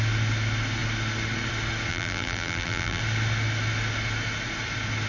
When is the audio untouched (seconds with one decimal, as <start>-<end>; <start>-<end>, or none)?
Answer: 0.0-1.9; 3.0-5.1